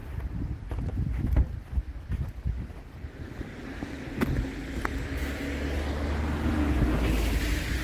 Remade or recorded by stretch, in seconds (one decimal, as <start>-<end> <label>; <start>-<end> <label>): 0.0-1.6 remade; 1.6-7.8 recorded